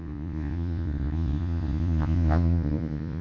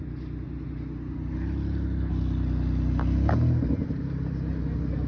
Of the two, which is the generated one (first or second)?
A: first